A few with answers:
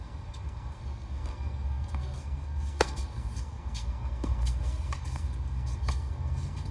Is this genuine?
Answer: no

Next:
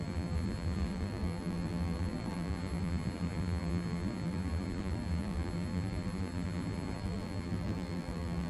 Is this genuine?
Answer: no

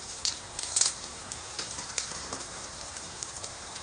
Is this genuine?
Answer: no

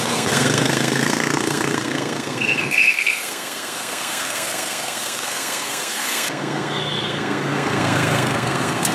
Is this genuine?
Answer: no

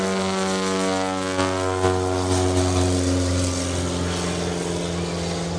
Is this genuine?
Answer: yes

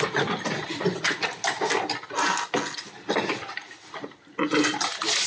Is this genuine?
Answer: yes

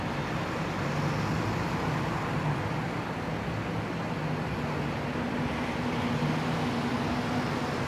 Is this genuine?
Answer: yes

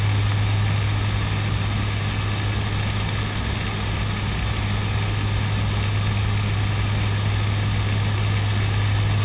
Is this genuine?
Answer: yes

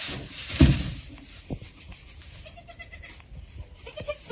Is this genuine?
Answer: no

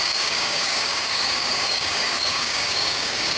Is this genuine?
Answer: no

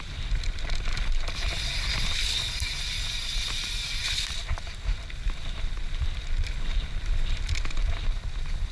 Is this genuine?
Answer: yes